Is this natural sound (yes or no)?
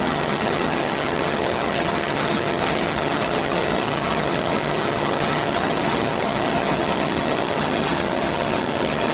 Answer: no